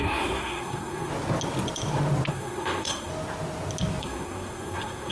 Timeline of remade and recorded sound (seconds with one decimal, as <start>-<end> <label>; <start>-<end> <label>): 0.0-1.1 remade; 1.1-2.3 recorded; 2.3-3.1 remade; 3.1-4.0 recorded; 4.0-5.1 remade